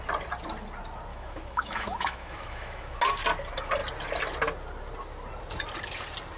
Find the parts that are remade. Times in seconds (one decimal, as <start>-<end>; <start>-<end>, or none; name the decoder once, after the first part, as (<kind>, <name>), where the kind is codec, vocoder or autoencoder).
1.1-3.0 (autoencoder, DAC-VAE)